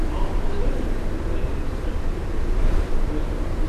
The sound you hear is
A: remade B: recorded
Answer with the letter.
A